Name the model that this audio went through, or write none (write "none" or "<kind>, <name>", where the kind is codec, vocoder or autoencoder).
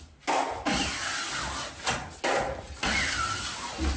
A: none